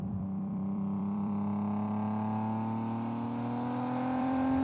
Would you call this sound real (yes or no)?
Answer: no